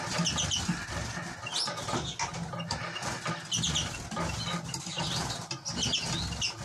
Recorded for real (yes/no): yes